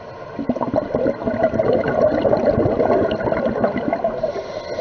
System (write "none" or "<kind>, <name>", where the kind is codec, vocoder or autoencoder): none